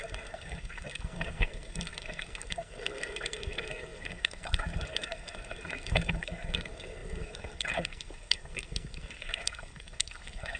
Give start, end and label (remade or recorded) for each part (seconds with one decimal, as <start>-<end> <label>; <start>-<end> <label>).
0.0-10.6 remade